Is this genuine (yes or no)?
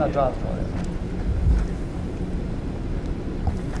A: yes